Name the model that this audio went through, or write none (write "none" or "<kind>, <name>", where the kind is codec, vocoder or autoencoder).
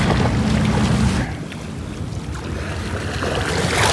none